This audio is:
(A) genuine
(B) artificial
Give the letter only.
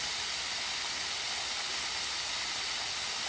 A